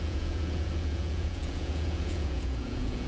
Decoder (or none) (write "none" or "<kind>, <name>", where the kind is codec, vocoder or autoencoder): vocoder, Vocos